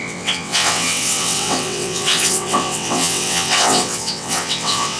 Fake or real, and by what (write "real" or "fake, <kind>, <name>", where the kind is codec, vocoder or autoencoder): fake, vocoder, WaveNeXt